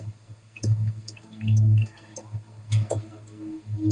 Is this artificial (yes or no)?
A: yes